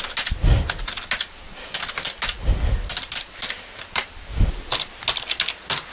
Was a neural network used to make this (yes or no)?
no